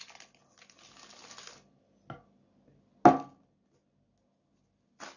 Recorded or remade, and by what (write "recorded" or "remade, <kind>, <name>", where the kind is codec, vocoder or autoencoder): recorded